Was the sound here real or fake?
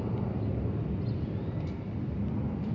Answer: real